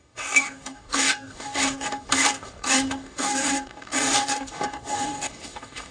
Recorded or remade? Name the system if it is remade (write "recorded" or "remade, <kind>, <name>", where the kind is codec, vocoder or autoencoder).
remade, codec, DAC